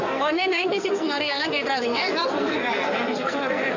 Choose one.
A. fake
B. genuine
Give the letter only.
A